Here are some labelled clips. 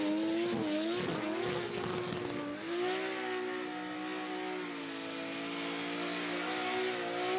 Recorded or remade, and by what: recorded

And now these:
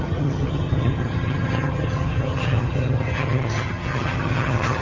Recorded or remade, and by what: remade, vocoder, HiFi-GAN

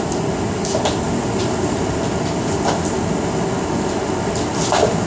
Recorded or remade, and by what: recorded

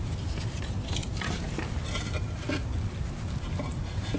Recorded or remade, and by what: recorded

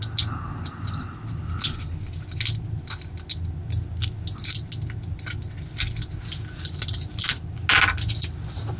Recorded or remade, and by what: recorded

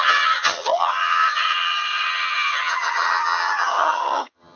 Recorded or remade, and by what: remade, vocoder, HiFi-GAN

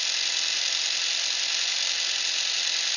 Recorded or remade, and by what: recorded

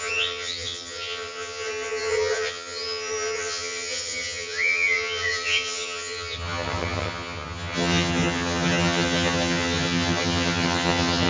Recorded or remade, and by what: remade, vocoder, HiFi-GAN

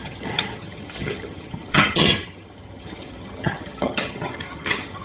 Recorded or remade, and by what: remade, vocoder, HiFi-GAN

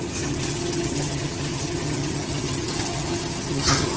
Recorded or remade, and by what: remade, vocoder, HiFi-GAN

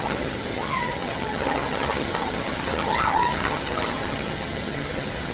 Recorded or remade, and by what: remade, vocoder, HiFi-GAN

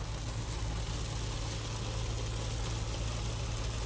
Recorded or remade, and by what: recorded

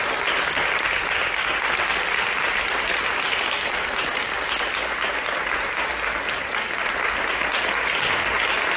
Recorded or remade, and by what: recorded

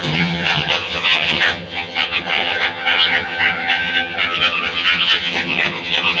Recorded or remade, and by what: remade, vocoder, HiFi-GAN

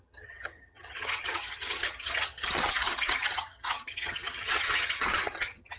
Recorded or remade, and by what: remade, vocoder, HiFi-GAN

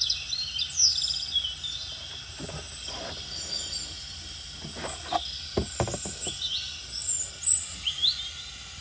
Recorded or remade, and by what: recorded